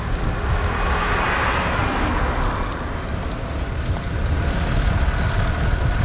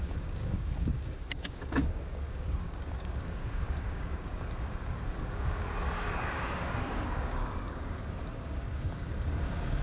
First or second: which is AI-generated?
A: second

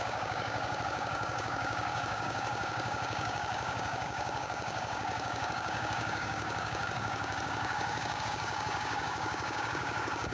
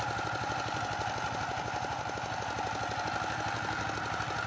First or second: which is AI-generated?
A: first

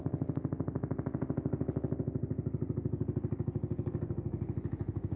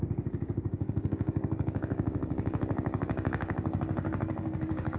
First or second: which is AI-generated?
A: second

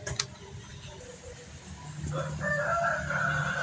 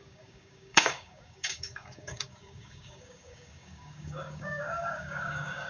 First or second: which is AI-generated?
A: second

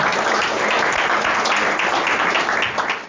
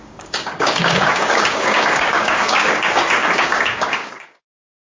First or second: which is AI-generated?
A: second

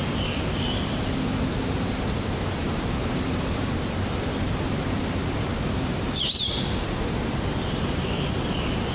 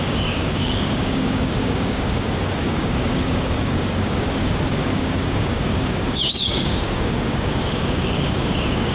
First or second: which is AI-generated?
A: second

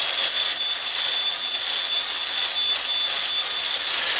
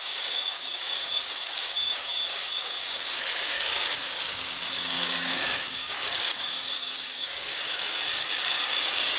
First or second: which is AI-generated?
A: second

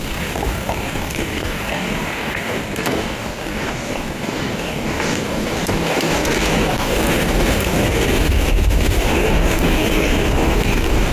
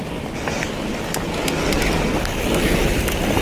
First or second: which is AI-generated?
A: first